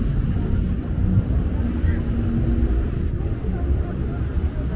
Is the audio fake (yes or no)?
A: no